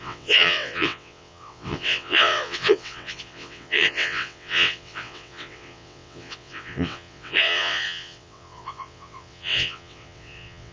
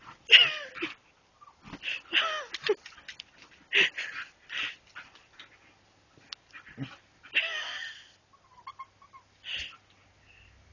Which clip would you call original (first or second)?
second